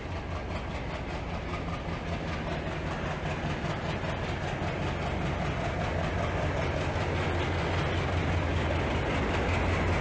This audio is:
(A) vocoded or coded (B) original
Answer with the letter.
B